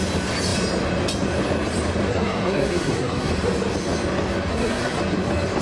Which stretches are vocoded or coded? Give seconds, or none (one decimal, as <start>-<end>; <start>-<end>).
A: 2.1-3.3; 4.5-5.0